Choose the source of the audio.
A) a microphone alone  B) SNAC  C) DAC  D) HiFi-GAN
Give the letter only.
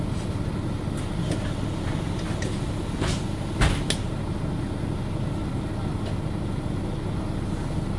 A